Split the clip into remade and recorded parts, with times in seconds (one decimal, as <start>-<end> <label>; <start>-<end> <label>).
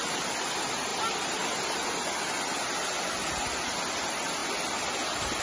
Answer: 0.0-5.4 recorded